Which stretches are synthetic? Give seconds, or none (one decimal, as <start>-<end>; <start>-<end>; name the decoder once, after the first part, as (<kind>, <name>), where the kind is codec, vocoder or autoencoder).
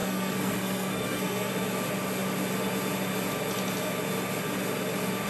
0.0-1.5 (codec, SNAC)